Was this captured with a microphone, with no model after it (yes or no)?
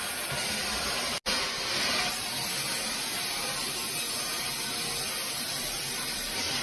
yes